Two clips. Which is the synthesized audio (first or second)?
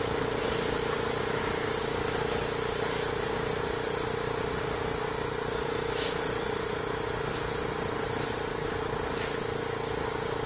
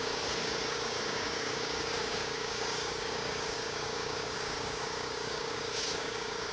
second